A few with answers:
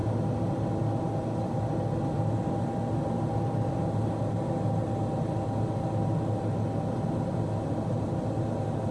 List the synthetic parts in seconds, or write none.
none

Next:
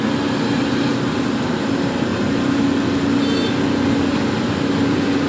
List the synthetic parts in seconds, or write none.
none

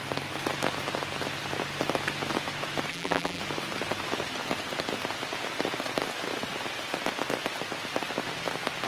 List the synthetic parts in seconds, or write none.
2.9-3.4 (vocoder, BigVGAN v2)